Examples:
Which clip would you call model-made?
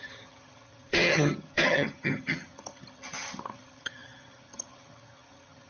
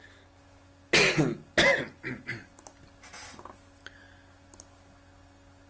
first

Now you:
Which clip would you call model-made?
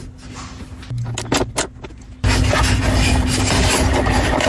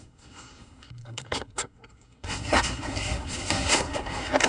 second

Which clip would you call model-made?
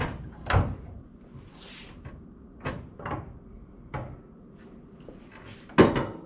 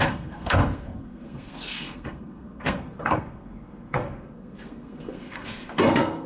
second